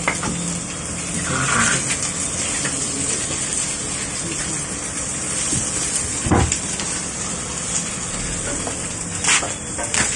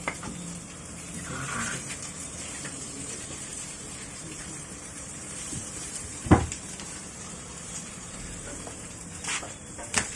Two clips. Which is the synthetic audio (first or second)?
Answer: second